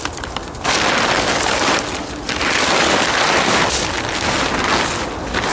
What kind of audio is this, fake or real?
real